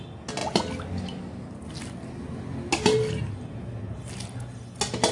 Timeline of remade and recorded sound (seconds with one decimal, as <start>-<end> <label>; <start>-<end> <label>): 0.0-5.1 recorded